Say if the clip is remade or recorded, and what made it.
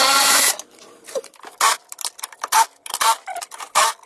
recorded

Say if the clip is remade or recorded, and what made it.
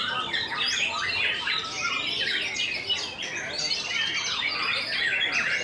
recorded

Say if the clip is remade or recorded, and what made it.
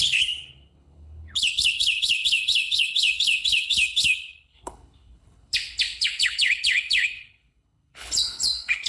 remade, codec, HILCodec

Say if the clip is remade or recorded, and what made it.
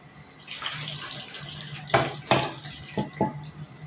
recorded